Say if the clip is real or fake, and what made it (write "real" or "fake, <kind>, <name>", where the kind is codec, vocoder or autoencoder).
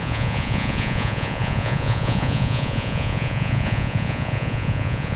fake, vocoder, Vocos